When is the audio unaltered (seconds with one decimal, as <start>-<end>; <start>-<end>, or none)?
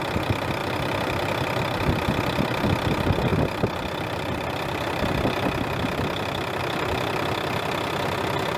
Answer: 0.0-8.6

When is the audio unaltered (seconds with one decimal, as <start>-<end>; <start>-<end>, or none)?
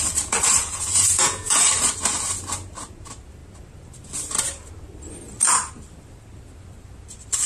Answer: 0.0-0.6; 1.7-7.5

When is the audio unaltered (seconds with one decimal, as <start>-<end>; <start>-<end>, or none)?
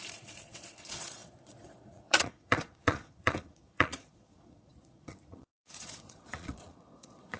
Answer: none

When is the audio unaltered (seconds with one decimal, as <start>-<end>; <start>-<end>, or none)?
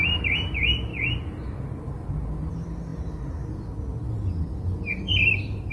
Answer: 0.0-5.7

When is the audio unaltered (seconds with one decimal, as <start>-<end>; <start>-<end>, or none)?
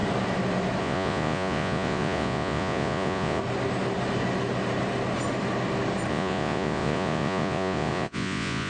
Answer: 0.0-0.8; 3.4-6.1